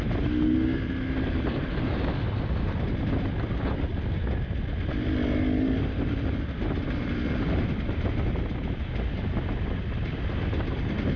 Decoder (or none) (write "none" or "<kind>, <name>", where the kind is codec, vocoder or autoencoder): none